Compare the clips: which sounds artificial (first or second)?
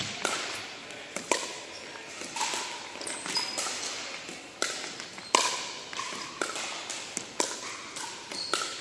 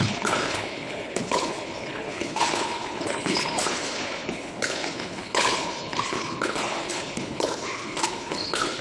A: second